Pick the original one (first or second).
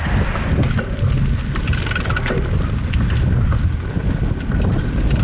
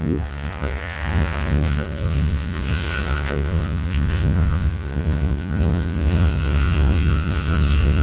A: first